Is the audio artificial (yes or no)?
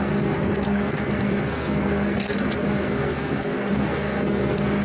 yes